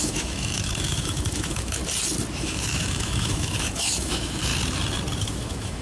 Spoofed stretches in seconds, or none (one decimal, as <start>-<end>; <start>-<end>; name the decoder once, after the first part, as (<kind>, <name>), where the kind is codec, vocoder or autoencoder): 0.0-1.8 (autoencoder, DAC-VAE); 2.3-4.5; 5.2-5.8